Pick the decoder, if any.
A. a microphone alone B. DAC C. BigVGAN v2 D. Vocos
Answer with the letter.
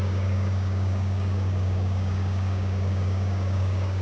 B